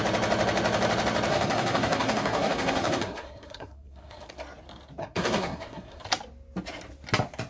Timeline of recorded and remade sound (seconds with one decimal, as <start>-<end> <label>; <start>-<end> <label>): 0.0-1.3 recorded; 1.3-4.3 remade; 4.3-5.0 recorded; 5.0-6.0 remade; 6.0-7.5 recorded